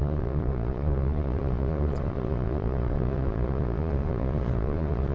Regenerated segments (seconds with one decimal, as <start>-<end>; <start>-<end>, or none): 0.0-5.1